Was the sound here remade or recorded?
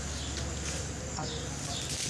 recorded